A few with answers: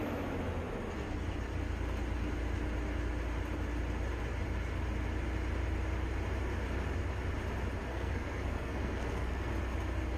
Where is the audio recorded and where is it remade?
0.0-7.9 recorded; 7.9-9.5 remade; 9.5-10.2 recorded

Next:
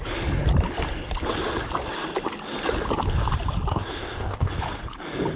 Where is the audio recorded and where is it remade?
0.0-3.7 recorded; 3.7-4.5 remade; 4.5-5.4 recorded

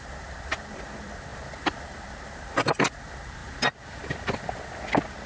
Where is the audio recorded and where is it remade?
0.0-5.3 recorded